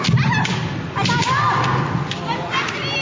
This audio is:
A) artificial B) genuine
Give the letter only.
B